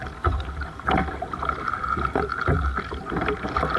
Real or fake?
real